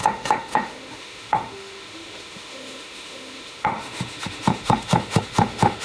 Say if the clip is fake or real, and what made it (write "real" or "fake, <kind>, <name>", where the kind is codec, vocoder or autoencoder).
fake, autoencoder, DAC-VAE